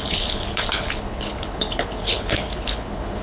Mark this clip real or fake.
fake